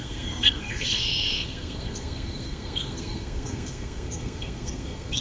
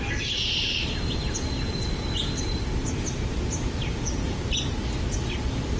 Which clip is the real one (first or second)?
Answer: second